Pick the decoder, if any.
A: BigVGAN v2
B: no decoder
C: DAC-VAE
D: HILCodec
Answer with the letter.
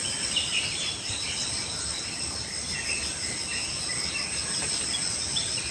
B